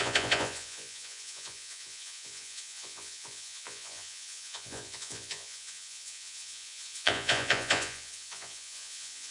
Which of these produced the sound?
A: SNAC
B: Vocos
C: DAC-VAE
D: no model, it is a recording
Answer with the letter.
B